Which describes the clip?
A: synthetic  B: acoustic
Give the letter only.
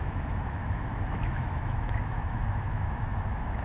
A